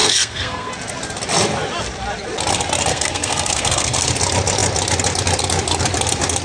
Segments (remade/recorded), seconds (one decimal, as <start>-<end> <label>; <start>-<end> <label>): 0.0-0.7 remade; 0.7-2.9 recorded; 2.9-4.1 remade; 4.1-6.4 recorded